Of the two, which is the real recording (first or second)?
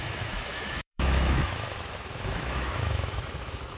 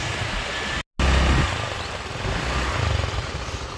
second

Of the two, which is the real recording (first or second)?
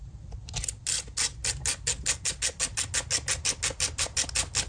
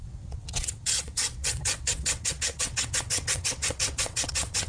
first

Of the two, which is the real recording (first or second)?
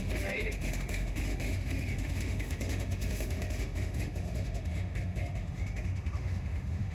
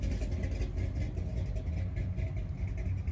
second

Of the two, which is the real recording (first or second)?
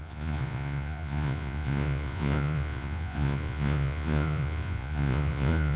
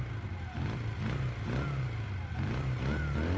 second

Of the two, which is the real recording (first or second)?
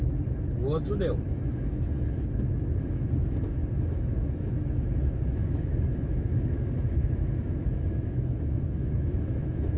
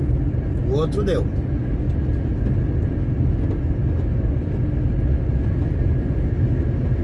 second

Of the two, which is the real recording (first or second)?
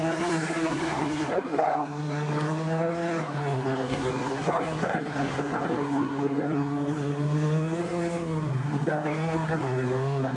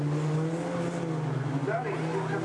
second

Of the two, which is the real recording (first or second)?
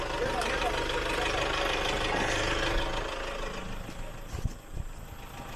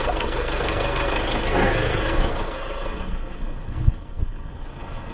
first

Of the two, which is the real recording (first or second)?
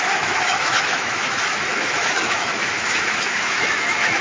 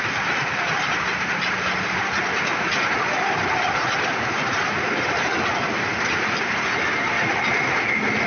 second